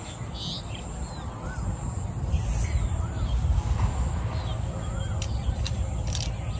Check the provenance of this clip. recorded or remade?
recorded